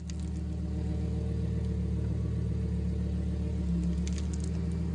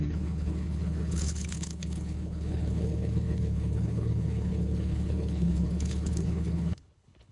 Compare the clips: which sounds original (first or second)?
first